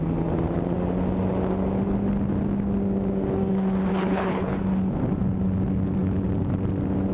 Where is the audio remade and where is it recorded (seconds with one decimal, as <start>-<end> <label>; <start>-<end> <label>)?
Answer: 0.0-3.9 recorded; 3.9-4.6 remade; 4.6-7.1 recorded